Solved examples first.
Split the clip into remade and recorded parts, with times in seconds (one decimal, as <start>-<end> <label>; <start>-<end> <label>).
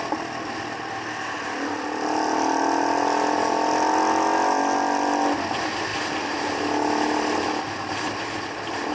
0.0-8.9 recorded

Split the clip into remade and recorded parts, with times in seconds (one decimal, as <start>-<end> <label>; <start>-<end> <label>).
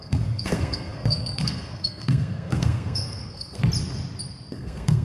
0.0-3.6 remade; 3.6-4.5 recorded; 4.5-5.0 remade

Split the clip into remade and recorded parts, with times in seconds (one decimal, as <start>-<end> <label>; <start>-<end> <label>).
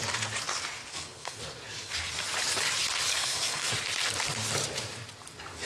0.0-0.9 recorded; 0.9-1.4 remade; 1.4-3.1 recorded; 3.1-3.7 remade; 3.7-5.7 recorded